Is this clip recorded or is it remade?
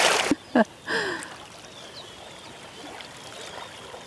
recorded